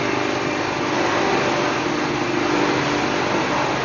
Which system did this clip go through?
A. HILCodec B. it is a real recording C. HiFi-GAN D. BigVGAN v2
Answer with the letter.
B